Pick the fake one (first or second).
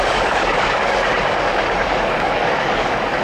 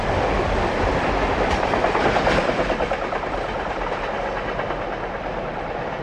first